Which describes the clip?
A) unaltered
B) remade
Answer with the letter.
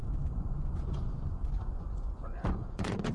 B